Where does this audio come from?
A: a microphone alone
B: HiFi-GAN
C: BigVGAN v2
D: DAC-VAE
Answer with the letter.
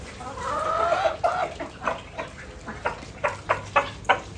A